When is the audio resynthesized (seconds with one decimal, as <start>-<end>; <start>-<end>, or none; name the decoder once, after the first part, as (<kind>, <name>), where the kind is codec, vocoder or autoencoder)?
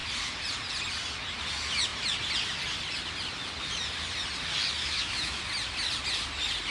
4.8-5.4 (autoencoder, DAC-VAE)